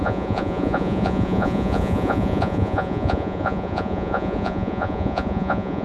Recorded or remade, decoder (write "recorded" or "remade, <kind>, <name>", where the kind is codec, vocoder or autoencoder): remade, vocoder, Vocos